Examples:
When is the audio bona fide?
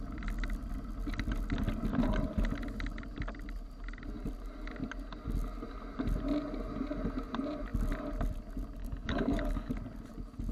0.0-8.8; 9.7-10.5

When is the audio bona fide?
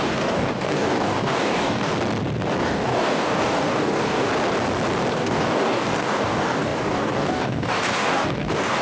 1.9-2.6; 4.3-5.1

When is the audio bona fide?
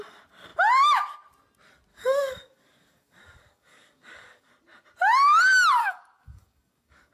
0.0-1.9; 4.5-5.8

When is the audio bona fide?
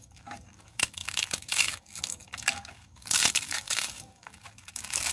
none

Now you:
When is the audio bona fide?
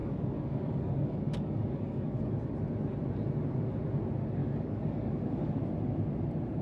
2.4-4.4; 5.6-6.6